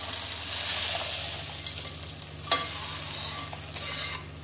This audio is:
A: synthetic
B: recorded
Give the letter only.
B